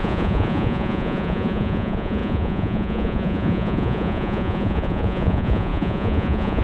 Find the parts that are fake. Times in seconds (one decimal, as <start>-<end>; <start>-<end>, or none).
0.0-6.6